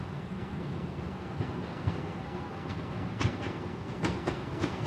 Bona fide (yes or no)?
no